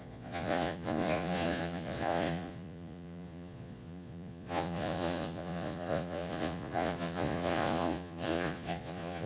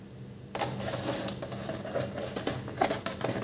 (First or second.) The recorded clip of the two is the second